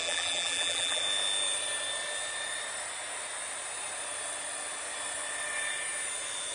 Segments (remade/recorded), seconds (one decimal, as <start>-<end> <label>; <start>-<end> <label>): 0.0-1.0 remade; 1.0-6.5 recorded